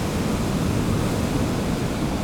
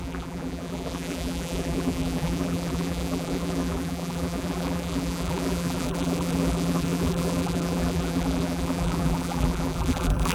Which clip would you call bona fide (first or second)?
first